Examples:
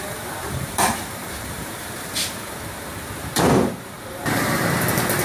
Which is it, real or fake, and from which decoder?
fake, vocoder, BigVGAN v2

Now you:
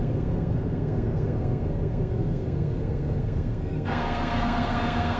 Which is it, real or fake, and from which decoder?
fake, codec, SNAC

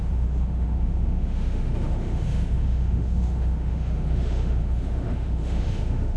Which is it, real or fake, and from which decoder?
fake, autoencoder, DAC-VAE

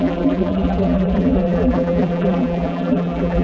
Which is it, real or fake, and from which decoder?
fake, vocoder, BigVGAN v2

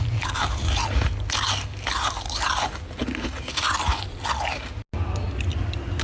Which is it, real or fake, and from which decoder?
real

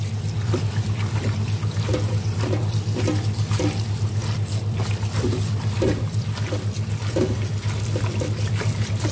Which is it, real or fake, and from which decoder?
real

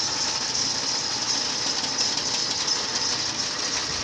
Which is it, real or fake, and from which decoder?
real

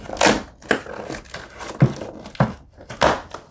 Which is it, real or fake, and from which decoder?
real